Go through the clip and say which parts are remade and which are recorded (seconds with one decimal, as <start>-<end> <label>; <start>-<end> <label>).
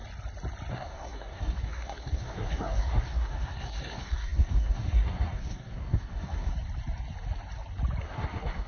0.0-0.7 recorded; 0.7-6.5 remade; 6.5-8.0 recorded; 8.0-8.7 remade